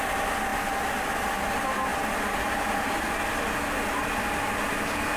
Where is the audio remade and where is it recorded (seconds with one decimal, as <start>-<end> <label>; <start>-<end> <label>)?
0.0-5.2 recorded